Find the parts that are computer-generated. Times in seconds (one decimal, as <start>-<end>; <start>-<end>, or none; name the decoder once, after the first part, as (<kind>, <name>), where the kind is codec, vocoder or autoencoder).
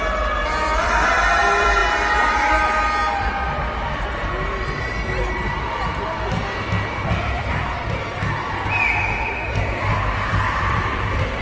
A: 0.0-1.8 (vocoder, BigVGAN v2); 6.9-11.4